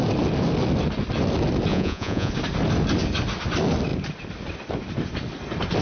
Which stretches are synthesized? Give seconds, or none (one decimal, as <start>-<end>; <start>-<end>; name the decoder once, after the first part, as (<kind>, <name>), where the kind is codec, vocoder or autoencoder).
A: 1.7-2.3 (vocoder, Vocos)